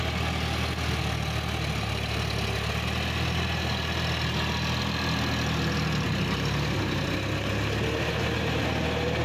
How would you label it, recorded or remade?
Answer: recorded